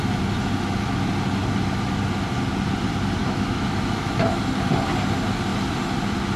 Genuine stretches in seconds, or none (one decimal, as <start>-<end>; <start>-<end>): 0.0-3.2; 4.4-6.4